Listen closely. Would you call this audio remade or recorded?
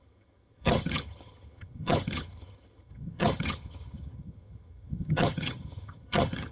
remade